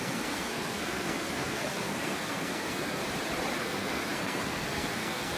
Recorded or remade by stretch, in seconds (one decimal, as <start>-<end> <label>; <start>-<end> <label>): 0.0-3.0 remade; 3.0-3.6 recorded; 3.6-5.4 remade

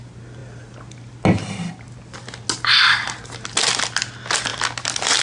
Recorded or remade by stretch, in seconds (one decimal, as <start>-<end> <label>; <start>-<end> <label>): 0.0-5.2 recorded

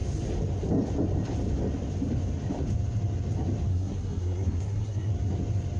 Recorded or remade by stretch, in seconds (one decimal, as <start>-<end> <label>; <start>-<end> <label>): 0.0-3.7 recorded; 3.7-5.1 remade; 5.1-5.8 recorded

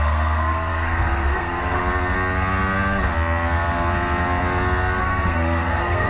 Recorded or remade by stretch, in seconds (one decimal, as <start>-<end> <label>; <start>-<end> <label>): 0.0-1.8 remade; 1.8-5.0 recorded; 5.0-6.1 remade

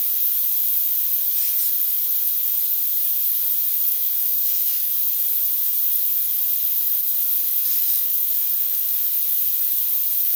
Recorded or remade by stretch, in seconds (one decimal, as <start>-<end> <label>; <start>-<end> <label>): 0.0-3.9 recorded; 3.9-4.9 remade; 4.9-7.8 recorded; 7.8-8.9 remade; 8.9-10.4 recorded

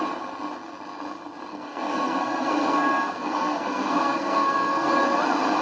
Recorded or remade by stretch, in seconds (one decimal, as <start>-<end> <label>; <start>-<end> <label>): 0.0-1.5 recorded; 1.5-4.9 remade; 4.9-5.6 recorded

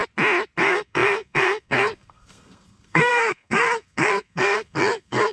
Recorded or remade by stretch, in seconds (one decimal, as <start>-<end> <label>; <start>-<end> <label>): 0.0-0.6 recorded; 0.6-5.3 remade